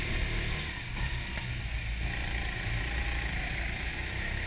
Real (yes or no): yes